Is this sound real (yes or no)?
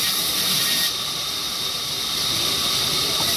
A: no